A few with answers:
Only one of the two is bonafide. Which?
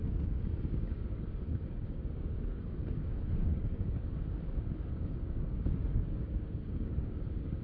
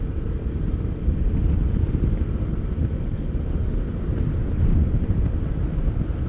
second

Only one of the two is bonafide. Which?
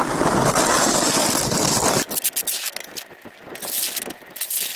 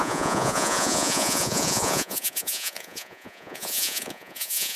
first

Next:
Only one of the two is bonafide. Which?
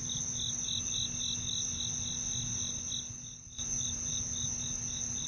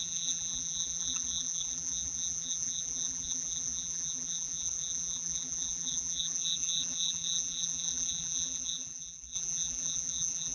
first